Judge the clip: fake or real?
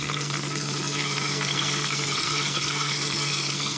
fake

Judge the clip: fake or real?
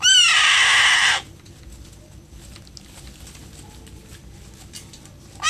real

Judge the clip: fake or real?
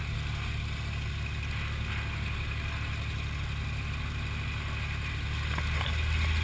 real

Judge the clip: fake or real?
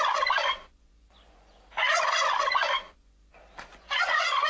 fake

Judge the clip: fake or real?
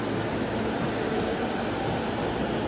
real